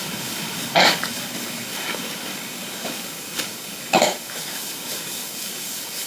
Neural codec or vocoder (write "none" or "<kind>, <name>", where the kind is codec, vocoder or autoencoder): codec, DAC